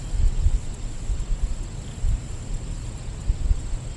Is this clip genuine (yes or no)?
yes